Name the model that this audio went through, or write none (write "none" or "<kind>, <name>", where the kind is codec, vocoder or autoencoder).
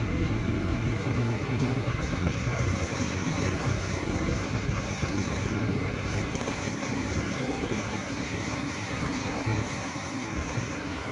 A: codec, SNAC